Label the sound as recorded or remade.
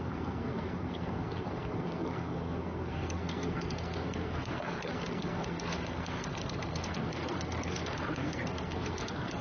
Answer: remade